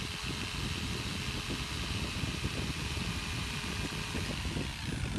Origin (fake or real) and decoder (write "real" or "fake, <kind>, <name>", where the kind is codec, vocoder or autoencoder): real